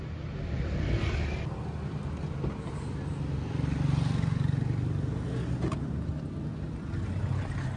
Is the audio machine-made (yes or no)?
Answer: no